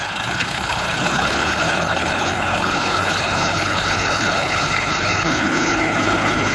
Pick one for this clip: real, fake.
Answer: fake